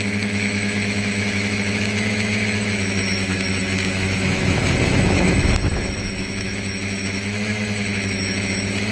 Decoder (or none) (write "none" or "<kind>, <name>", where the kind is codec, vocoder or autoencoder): autoencoder, DAC-VAE